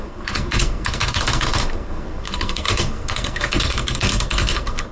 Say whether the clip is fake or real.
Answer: fake